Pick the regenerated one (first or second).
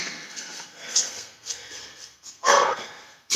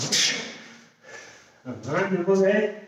first